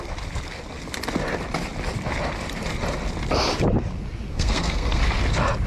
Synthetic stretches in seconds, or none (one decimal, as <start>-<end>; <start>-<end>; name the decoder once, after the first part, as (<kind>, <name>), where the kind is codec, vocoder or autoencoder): 4.3-5.0 (codec, SNAC)